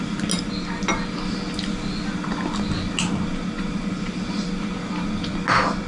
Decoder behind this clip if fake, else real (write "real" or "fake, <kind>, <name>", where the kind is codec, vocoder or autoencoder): real